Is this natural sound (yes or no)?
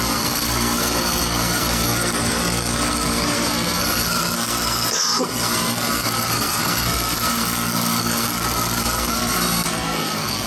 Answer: no